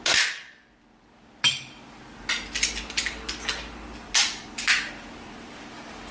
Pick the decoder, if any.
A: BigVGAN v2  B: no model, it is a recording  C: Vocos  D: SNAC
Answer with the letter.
B